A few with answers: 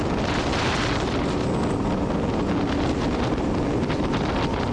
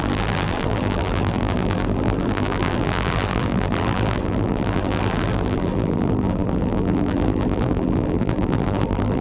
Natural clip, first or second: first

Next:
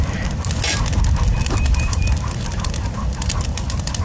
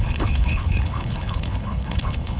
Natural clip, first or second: first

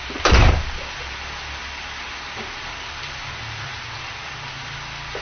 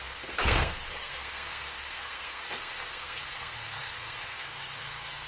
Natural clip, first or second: first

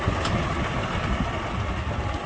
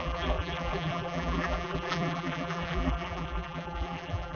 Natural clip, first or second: first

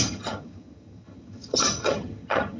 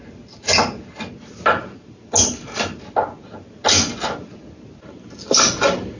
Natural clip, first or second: second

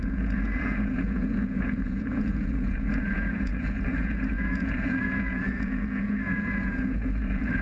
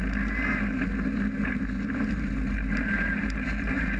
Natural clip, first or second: second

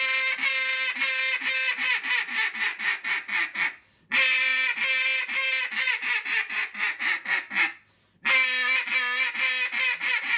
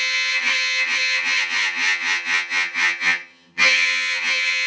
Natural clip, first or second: first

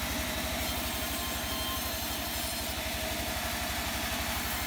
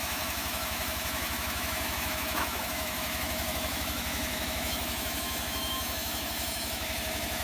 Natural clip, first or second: first